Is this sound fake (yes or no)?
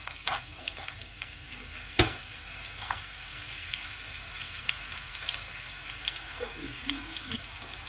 yes